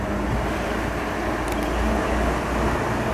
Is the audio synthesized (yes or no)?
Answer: no